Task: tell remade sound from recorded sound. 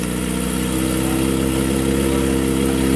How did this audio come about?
recorded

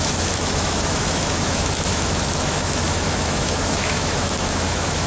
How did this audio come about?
remade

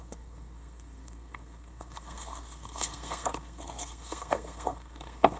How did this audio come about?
remade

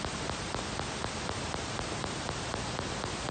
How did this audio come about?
recorded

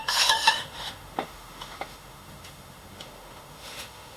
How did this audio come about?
remade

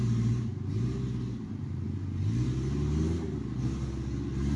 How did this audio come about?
recorded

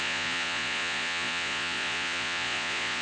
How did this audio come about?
remade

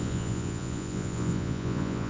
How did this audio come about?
remade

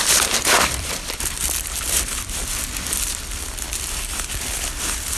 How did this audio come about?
remade